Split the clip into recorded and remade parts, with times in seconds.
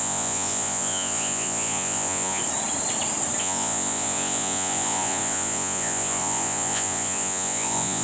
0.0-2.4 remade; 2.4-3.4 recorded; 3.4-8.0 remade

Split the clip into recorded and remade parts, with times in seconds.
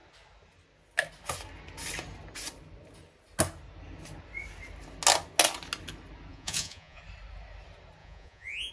0.0-6.3 recorded; 6.3-7.0 remade; 7.0-8.0 recorded; 8.0-8.7 remade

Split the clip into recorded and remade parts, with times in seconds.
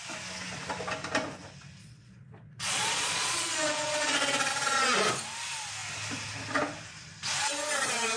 0.0-1.8 recorded; 1.8-4.5 remade; 4.5-8.2 recorded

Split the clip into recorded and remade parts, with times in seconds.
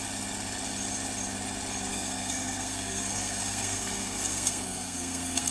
0.0-1.9 recorded; 1.9-5.5 remade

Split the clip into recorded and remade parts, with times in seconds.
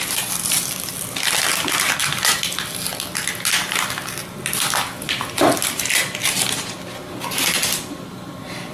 0.0-1.5 remade; 1.5-2.0 recorded; 2.0-2.4 remade; 2.4-7.4 recorded; 7.4-8.7 remade